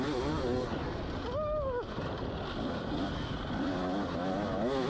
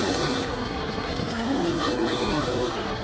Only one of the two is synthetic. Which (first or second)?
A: second